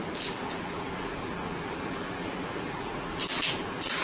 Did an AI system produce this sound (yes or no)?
yes